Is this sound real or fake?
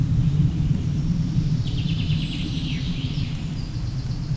fake